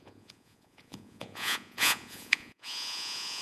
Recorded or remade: remade